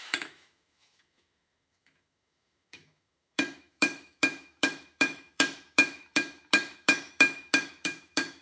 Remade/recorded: remade